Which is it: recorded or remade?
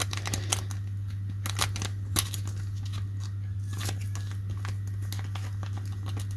recorded